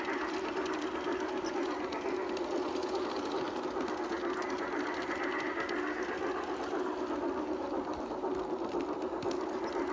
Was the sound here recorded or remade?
recorded